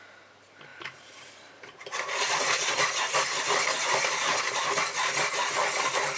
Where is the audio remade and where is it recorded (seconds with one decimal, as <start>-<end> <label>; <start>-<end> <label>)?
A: 0.0-0.7 recorded; 0.7-4.4 remade; 4.4-6.2 recorded